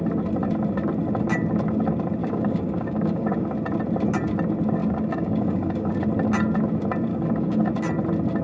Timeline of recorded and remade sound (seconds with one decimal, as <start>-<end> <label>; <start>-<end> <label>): 0.0-2.2 recorded; 2.2-3.5 remade; 3.5-4.8 recorded; 4.8-6.0 remade; 6.0-7.1 recorded; 7.1-7.7 remade; 7.7-8.4 recorded